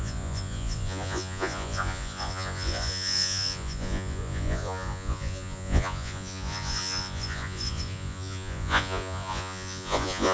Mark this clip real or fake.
fake